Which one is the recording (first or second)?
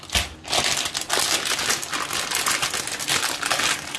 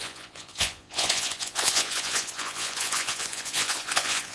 first